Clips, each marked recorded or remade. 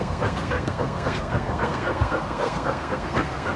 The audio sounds remade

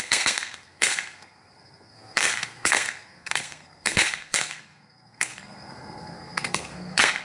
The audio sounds remade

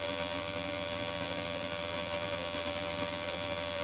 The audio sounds remade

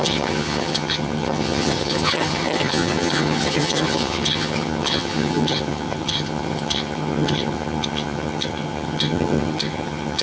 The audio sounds remade